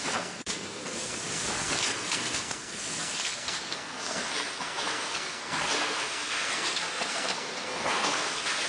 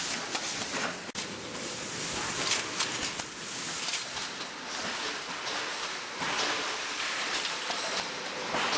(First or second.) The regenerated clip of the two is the first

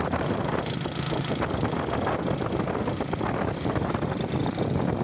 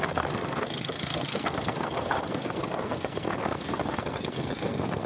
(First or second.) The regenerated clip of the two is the second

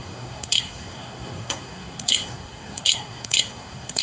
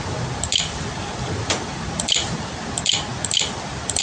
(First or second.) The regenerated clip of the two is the first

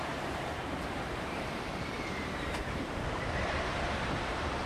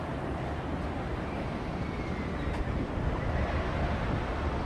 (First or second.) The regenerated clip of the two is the first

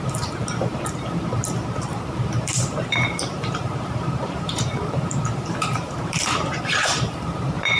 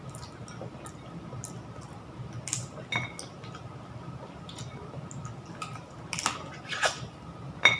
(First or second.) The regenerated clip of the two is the first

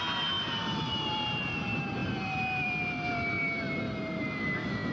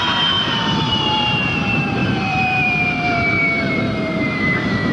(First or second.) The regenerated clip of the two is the second